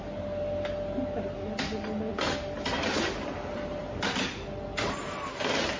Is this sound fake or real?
real